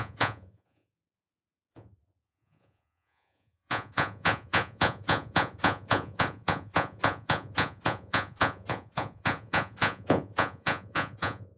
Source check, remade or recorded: remade